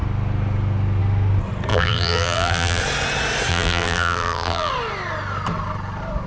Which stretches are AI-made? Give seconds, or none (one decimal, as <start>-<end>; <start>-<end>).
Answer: 1.7-2.8; 3.5-4.7